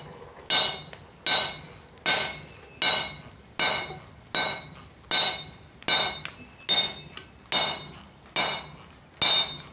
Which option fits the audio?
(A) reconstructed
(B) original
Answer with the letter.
B